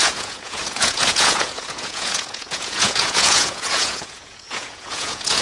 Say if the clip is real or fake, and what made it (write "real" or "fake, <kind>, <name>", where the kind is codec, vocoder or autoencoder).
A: fake, vocoder, Vocos